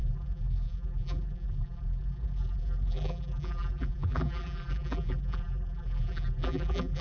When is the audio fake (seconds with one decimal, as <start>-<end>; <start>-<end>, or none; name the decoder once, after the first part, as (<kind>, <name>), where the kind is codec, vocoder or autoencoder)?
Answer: 0.0-7.0 (vocoder, BigVGAN v2)